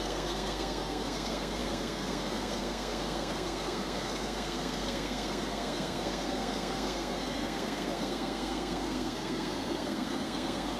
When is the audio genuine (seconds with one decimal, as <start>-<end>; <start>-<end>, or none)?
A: none